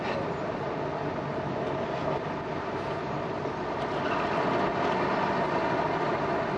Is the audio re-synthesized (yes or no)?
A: no